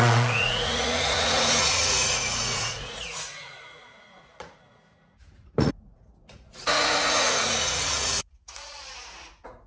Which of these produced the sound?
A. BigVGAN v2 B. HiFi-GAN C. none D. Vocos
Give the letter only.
D